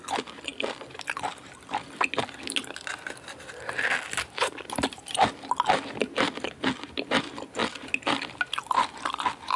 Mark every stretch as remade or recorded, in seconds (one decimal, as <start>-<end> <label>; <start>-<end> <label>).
0.0-9.6 recorded